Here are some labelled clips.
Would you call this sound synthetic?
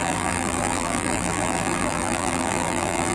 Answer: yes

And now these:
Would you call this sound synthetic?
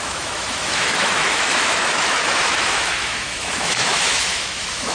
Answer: yes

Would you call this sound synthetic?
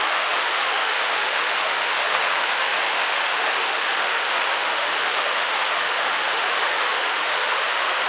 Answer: yes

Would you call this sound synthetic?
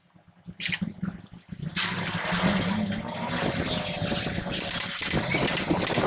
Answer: no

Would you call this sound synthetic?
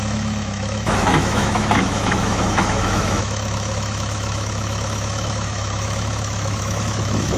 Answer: yes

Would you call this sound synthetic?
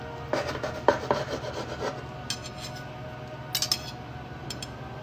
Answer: no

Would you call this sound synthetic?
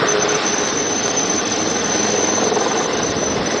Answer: no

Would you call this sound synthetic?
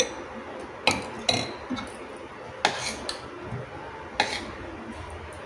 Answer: no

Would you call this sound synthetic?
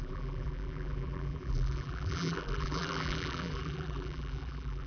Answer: yes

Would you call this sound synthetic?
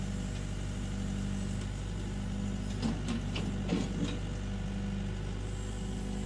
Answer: no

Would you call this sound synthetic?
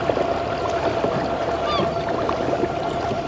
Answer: no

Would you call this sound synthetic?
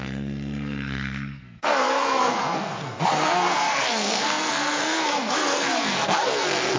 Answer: yes